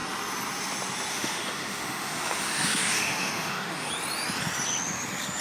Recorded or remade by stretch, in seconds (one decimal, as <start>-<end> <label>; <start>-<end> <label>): 0.0-1.1 recorded; 1.1-3.9 remade; 3.9-5.4 recorded